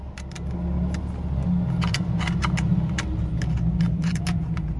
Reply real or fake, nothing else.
real